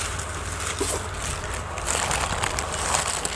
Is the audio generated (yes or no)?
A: no